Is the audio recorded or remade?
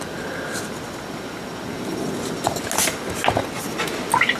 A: recorded